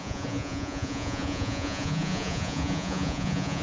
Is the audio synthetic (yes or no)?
yes